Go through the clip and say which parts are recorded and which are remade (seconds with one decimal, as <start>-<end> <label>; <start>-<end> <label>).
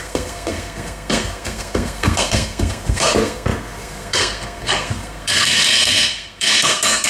0.0-7.1 remade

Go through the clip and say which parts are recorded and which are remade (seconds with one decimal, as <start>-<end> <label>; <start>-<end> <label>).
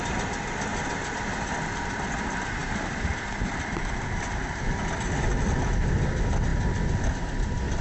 0.0-2.6 recorded; 2.6-3.5 remade; 3.5-7.8 recorded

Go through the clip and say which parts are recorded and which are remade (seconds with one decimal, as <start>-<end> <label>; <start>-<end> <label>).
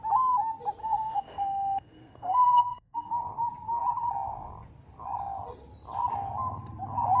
0.0-0.8 recorded; 0.8-3.1 remade; 3.1-7.2 recorded